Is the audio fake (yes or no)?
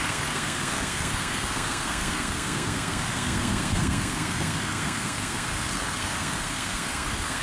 yes